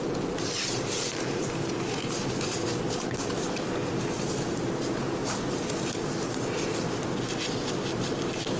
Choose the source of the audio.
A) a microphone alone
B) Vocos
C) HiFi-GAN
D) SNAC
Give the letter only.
A